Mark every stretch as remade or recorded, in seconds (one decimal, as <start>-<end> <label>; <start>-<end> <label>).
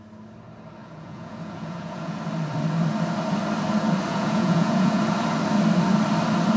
0.0-0.8 recorded; 0.8-2.2 remade; 2.2-4.1 recorded; 4.1-5.0 remade; 5.0-6.6 recorded